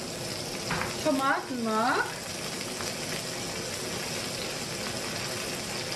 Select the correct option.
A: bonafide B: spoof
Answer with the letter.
A